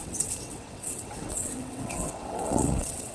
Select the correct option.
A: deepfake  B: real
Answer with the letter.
A